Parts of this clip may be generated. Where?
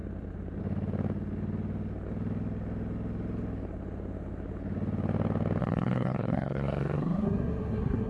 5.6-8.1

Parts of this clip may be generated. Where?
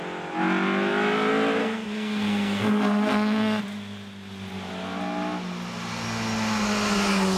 1.6-3.6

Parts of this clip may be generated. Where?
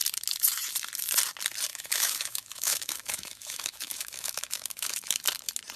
1.7-5.2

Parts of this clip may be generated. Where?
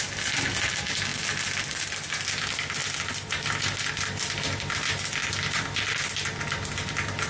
none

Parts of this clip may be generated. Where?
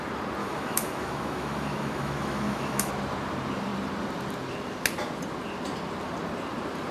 0.4-2.9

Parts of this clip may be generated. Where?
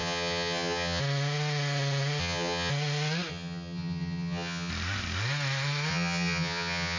0.0-1.0; 2.2-2.7; 3.3-4.7; 5.9-7.0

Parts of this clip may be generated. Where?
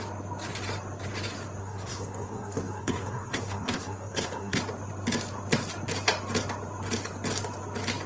1.6-4.6